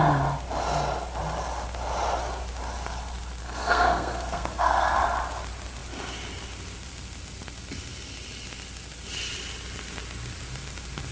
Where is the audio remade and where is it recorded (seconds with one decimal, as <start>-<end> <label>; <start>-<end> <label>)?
0.0-3.4 recorded; 3.4-5.0 remade; 5.0-11.1 recorded